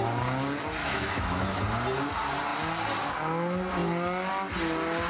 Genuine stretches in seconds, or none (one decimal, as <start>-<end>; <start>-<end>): 0.0-0.8; 1.6-5.1